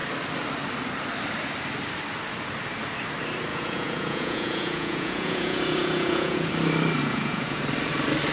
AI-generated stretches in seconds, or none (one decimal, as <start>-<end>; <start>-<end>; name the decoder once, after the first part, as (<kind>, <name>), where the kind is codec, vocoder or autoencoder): 3.5-6.5 (vocoder, Vocos); 7.0-7.6